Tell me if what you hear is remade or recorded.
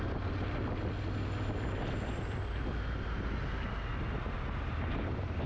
recorded